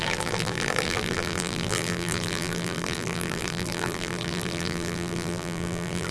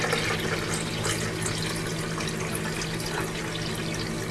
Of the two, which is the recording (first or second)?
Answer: second